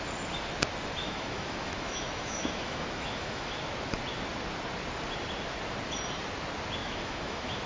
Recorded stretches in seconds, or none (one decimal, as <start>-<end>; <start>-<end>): 0.0-1.0; 3.6-6.8